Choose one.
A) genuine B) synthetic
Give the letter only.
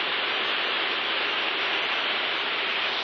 A